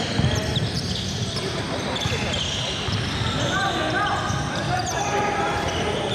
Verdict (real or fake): real